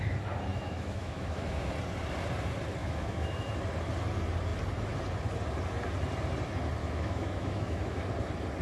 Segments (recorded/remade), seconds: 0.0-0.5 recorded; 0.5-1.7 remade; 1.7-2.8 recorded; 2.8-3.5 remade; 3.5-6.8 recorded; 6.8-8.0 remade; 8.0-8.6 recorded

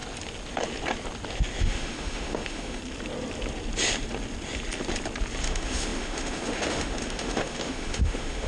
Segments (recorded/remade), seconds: 0.0-1.6 recorded; 1.6-2.8 remade; 2.8-5.4 recorded; 5.4-8.5 remade